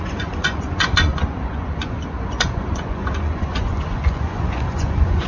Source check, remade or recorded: remade